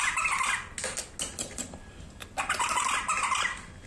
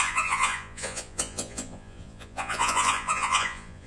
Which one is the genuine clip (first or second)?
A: first